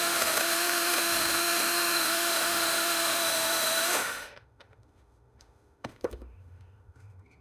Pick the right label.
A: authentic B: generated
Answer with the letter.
B